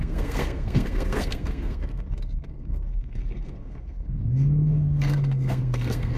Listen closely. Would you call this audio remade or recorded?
remade